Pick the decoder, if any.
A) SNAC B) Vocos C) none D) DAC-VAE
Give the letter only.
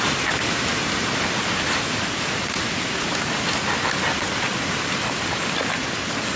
C